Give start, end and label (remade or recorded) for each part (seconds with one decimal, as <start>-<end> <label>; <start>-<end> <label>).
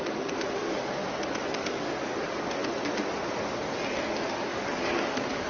0.0-1.0 remade; 1.0-1.5 recorded; 1.5-2.6 remade; 2.6-4.3 recorded; 4.3-5.5 remade